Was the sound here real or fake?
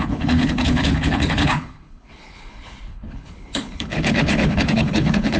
fake